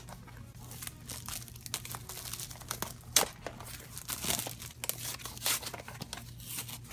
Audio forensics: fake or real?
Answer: real